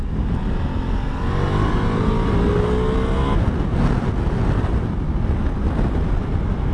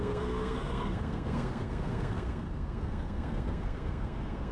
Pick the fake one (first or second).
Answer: second